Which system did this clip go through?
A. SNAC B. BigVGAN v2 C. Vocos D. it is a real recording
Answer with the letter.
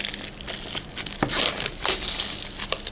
D